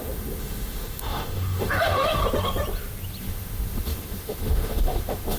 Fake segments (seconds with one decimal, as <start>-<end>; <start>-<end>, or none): 0.0-2.2; 3.2-5.4